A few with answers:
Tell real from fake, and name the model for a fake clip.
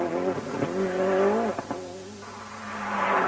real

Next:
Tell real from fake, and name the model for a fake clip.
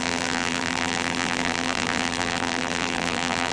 fake, vocoder, BigVGAN v2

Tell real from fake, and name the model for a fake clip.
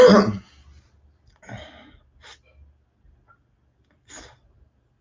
real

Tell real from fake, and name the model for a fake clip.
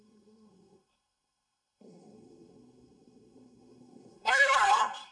fake, codec, SNAC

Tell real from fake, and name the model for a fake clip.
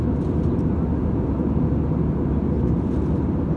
real